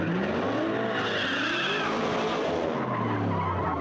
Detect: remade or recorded recorded